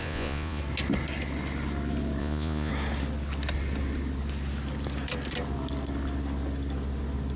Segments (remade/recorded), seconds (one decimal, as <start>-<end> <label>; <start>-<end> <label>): 0.0-0.6 remade; 0.6-2.2 recorded; 2.2-2.7 remade; 2.7-7.4 recorded